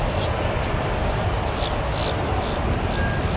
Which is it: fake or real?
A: real